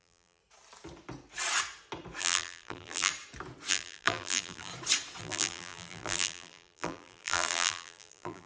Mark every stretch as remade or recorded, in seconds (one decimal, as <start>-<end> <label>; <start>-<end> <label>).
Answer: 0.0-0.4 remade; 0.4-2.2 recorded; 2.2-3.1 remade; 3.1-3.7 recorded; 3.7-4.7 remade; 4.7-5.2 recorded; 5.2-8.5 remade